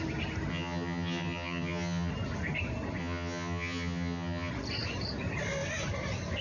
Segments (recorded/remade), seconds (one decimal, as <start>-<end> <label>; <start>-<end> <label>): 0.0-0.5 recorded; 0.5-2.1 remade; 2.1-3.0 recorded; 3.0-4.5 remade; 4.5-6.4 recorded